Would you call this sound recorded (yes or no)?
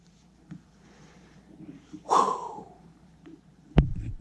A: no